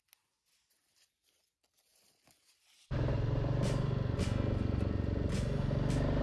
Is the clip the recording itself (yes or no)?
yes